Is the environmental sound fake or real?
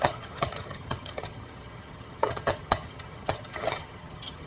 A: fake